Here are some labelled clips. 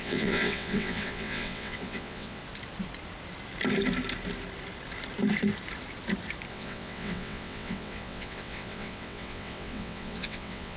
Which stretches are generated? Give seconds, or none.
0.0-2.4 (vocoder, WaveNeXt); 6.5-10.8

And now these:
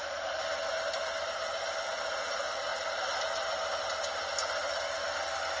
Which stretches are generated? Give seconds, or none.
none

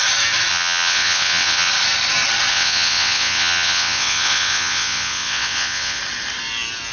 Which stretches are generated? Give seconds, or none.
0.5-1.7 (vocoder, WaveNeXt); 2.5-6.0